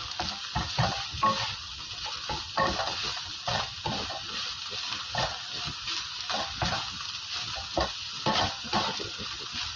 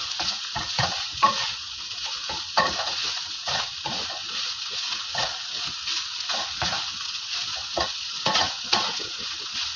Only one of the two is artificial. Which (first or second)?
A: second